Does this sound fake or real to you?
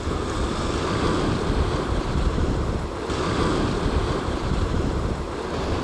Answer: fake